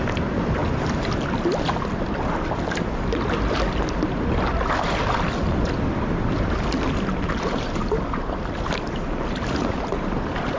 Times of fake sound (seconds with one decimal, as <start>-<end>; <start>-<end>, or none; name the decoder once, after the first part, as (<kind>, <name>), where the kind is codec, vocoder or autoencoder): 0.6-1.1 (vocoder, BigVGAN v2)